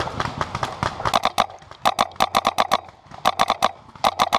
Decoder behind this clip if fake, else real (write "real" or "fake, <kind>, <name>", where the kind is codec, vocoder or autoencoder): real